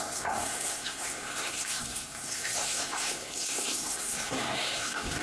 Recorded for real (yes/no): no